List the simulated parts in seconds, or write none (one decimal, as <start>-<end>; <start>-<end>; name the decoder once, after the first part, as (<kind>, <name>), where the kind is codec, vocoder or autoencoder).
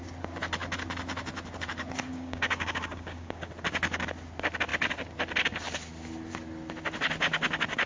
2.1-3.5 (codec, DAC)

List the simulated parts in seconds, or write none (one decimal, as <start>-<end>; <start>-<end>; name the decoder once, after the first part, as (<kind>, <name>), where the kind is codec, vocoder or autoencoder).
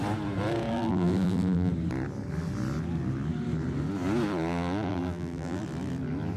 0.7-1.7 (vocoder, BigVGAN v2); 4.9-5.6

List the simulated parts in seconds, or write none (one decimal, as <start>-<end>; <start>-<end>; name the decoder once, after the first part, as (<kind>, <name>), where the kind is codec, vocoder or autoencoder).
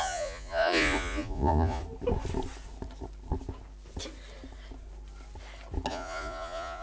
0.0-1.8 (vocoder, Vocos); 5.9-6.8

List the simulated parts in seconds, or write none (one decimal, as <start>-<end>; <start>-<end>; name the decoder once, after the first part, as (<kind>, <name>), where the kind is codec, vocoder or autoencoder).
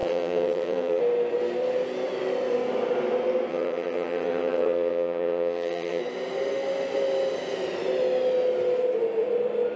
0.0-1.0 (vocoder, HiFi-GAN); 3.5-6.0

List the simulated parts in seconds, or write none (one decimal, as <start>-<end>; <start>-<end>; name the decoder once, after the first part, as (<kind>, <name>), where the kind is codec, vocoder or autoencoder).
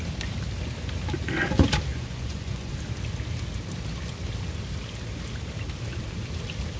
1.9-2.7 (vocoder, Vocos)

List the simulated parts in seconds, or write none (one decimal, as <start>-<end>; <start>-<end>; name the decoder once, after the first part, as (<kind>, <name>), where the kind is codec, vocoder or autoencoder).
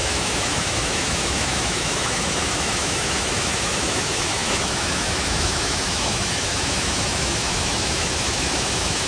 0.0-9.1 (autoencoder, DAC-VAE)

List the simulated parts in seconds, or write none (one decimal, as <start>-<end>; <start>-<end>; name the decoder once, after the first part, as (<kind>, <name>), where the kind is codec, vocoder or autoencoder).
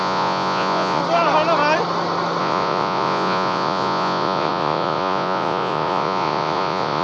0.0-1.0 (vocoder, Vocos); 2.4-7.0